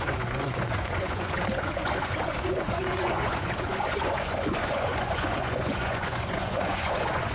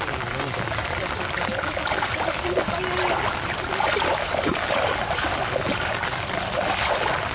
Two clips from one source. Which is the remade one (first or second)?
first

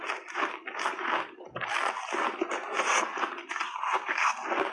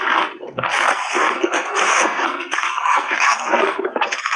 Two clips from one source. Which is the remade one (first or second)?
second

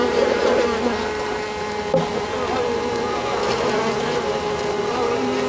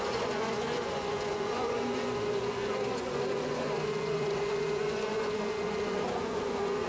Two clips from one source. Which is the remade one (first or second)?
second